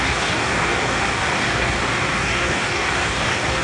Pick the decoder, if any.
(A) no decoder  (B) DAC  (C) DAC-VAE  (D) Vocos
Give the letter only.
B